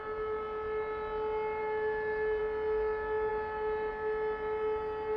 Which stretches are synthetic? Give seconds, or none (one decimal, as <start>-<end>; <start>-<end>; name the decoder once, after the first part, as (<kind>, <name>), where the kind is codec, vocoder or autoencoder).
1.6-2.4 (vocoder, BigVGAN v2); 3.3-3.9